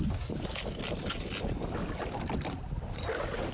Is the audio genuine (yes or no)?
yes